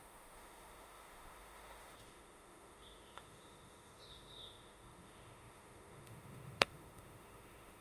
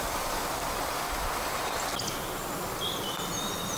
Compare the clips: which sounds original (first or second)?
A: second